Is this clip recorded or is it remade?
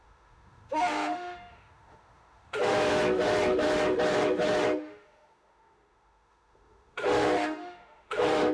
remade